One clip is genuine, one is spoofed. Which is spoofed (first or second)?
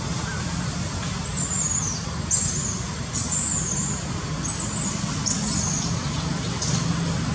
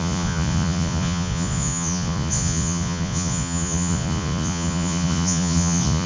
second